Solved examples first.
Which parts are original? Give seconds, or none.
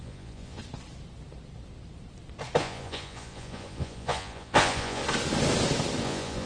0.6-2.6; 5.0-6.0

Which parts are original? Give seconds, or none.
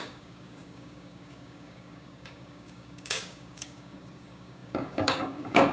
none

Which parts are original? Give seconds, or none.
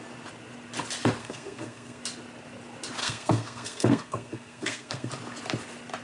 0.0-1.2; 2.0-3.0; 5.1-6.0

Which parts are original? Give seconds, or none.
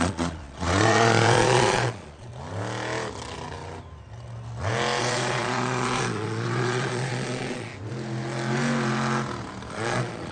2.3-5.0; 7.7-9.7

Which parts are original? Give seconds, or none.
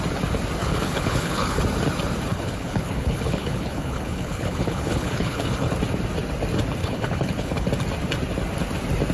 0.0-0.6; 1.6-2.3; 5.7-6.8; 7.7-9.1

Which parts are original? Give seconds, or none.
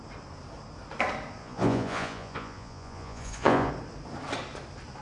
0.0-1.4; 3.7-5.0